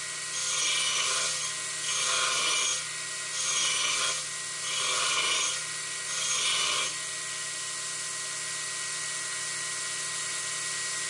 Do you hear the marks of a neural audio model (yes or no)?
no